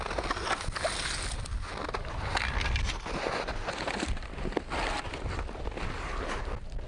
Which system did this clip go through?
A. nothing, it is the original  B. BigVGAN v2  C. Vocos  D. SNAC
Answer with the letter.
A